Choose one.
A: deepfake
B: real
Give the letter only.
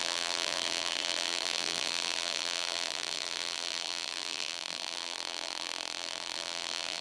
A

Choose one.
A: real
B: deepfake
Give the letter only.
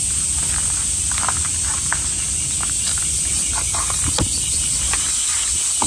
A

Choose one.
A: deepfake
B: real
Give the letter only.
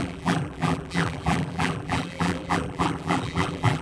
A